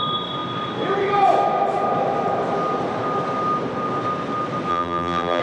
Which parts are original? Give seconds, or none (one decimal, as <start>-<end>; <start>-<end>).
0.0-4.7